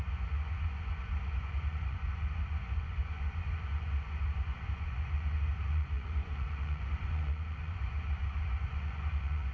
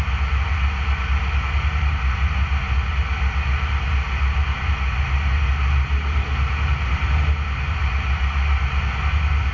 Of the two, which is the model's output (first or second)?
first